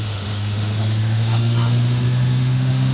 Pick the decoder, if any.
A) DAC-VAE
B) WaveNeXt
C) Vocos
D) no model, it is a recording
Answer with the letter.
A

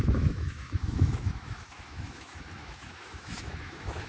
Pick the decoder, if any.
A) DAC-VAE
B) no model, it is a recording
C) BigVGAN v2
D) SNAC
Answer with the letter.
A